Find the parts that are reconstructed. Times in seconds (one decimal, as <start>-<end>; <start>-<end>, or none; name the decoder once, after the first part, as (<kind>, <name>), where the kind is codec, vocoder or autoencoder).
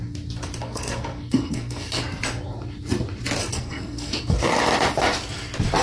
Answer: 0.6-2.0 (codec, SNAC); 3.5-4.6